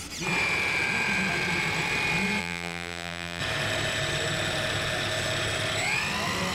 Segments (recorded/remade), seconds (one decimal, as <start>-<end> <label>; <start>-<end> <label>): 0.0-2.4 recorded; 2.4-3.4 remade; 3.4-6.5 recorded